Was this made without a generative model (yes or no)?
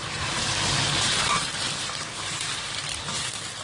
no